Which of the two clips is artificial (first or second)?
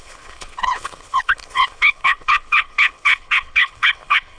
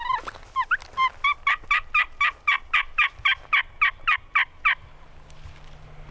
first